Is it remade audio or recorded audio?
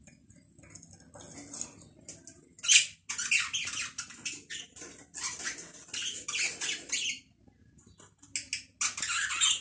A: recorded